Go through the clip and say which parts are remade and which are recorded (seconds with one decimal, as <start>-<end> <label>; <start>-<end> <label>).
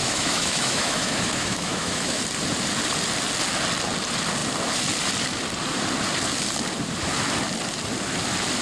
0.0-2.2 remade; 2.2-8.6 recorded